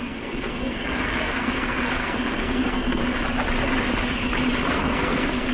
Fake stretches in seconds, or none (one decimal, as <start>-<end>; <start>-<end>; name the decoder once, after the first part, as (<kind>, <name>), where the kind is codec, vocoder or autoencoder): 0.0-3.0 (codec, SNAC); 4.7-5.5